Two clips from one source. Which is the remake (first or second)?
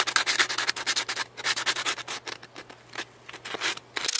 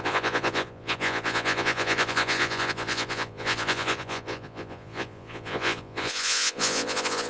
second